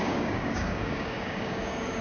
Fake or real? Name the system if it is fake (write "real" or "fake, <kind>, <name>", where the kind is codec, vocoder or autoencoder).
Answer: fake, codec, DAC